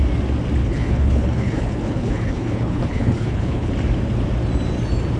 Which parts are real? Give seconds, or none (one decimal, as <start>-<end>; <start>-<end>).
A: 0.0-0.6; 3.7-5.2